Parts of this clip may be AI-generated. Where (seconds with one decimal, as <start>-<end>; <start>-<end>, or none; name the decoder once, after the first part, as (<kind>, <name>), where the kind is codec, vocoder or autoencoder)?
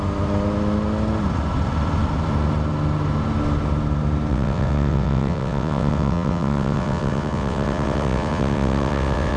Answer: 4.3-9.4 (vocoder, WaveNeXt)